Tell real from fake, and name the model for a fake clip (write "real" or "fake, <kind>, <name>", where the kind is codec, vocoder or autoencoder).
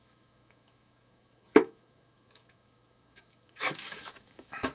fake, autoencoder, DAC-VAE